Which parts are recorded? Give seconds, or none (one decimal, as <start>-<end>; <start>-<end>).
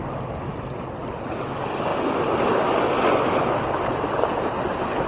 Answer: 0.0-5.1